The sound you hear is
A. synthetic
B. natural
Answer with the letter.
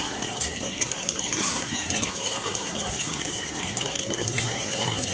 A